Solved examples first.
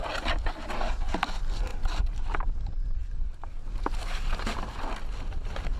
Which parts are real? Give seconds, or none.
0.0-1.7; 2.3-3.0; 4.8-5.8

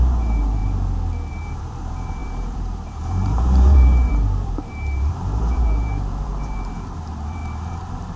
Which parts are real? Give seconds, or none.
0.6-1.3

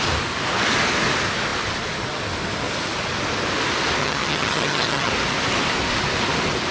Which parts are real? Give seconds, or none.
0.0-4.0; 5.1-6.7

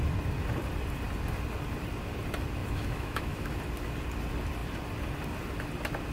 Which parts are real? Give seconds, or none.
0.0-2.6; 3.6-6.1

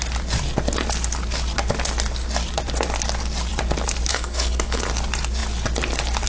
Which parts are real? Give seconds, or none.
0.0-4.1; 4.9-6.3

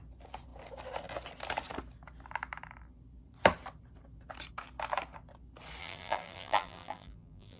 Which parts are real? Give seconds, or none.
0.0-5.8

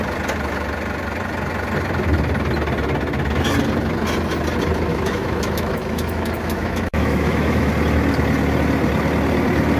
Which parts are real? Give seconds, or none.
0.0-4.9; 7.7-9.8

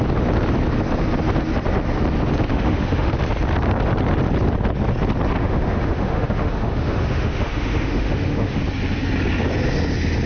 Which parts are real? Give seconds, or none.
0.0-2.5; 3.2-5.4; 8.6-10.3